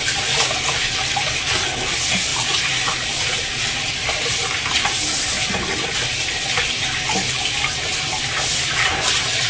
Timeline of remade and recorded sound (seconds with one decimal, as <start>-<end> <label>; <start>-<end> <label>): 0.0-9.5 recorded